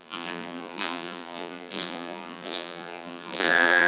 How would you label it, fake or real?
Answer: fake